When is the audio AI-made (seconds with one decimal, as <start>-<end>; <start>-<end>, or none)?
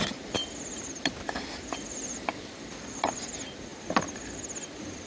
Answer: 0.0-3.7